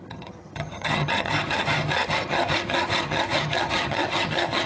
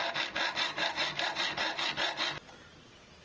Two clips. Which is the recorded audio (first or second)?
second